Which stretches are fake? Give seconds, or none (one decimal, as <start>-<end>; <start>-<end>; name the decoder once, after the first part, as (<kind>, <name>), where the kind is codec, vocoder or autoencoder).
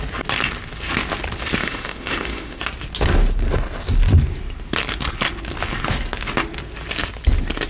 1.6-2.6 (autoencoder, DAC-VAE)